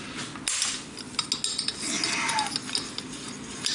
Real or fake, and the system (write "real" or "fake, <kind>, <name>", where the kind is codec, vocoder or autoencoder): real